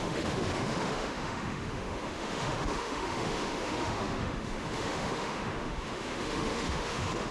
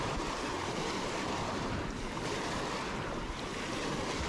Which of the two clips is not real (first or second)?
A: first